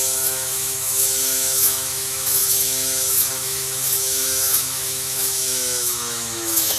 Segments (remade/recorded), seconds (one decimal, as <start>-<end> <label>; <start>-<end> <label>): 0.0-6.8 remade